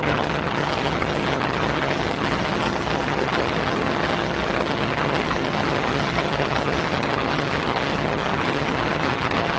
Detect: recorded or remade remade